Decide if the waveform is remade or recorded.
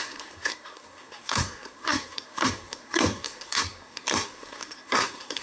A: remade